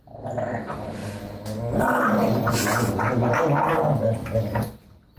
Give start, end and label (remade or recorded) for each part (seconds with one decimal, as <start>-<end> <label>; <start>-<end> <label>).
0.0-5.2 recorded